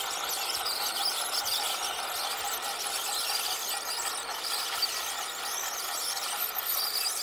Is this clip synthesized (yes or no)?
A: no